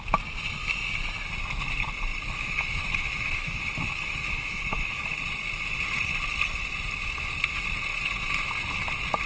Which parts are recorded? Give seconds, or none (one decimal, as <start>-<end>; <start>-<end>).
0.0-2.1; 5.3-9.3